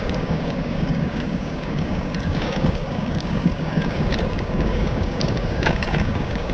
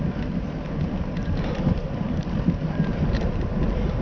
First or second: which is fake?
first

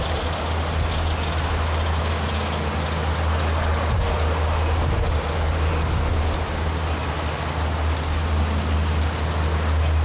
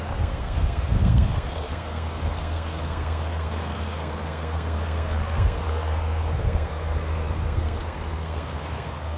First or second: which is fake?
second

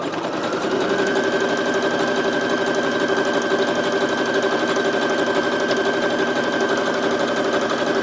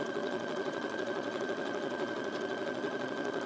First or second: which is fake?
second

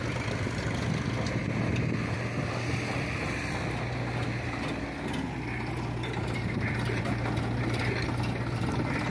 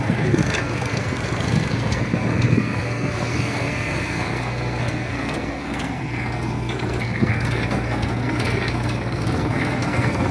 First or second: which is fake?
second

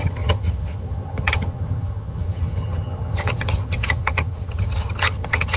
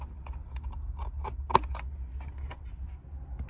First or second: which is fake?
first